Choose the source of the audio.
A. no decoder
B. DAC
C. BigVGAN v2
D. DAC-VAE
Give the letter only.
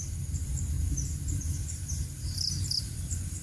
C